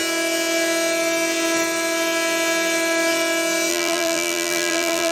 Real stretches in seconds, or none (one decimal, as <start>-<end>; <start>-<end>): 0.0-3.7